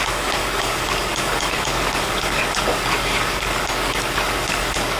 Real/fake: fake